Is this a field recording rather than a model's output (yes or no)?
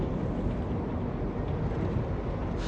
yes